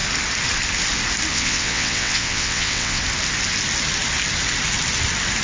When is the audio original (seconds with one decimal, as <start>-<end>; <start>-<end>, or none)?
0.0-1.3; 3.0-5.4